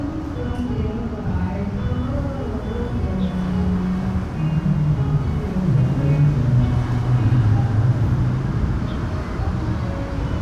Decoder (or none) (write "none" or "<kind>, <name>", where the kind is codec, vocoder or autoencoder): none